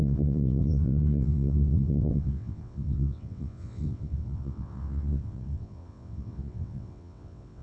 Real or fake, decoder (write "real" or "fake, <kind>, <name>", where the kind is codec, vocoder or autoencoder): fake, vocoder, WaveNeXt